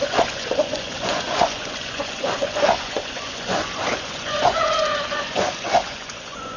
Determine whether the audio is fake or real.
fake